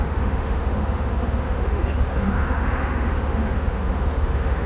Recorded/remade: remade